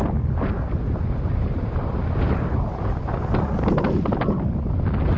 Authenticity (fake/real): real